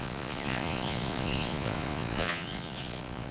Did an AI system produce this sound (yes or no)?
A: yes